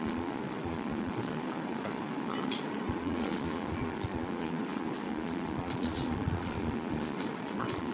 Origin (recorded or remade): remade